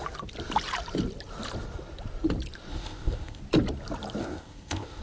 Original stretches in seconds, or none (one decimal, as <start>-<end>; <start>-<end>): 0.0-2.7; 3.4-4.2